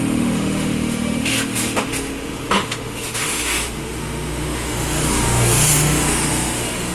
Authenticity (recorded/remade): remade